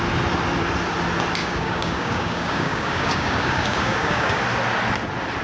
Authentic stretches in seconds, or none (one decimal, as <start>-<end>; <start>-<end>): 0.0-1.4; 4.4-5.4